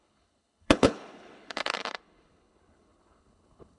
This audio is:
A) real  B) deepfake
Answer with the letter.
B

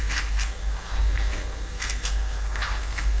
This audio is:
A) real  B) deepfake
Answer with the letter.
B